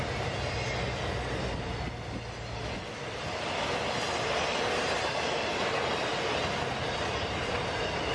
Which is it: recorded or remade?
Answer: recorded